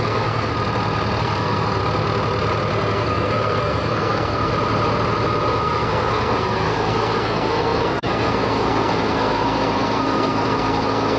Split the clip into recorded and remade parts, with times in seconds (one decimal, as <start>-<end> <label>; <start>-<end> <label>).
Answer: 0.0-0.5 remade; 0.5-1.2 recorded; 1.2-1.8 remade; 1.8-2.9 recorded; 2.9-4.5 remade; 4.5-5.6 recorded; 5.6-11.2 remade